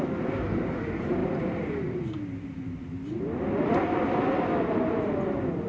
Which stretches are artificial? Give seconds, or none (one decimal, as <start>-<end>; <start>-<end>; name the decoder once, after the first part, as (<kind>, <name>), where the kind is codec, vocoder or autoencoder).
none